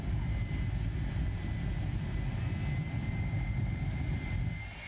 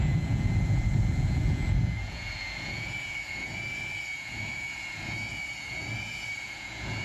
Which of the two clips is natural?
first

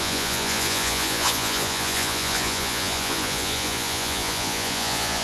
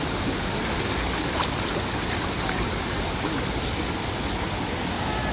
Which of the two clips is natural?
second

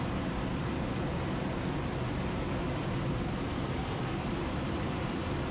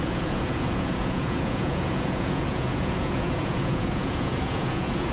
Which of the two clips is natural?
first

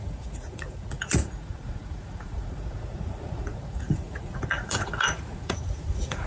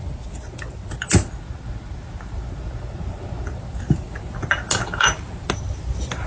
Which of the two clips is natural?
second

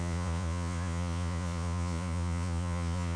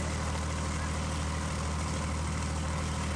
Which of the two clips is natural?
second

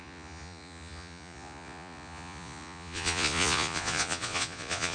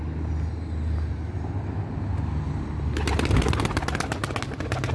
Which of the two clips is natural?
second